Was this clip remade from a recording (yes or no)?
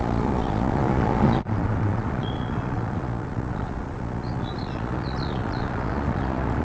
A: yes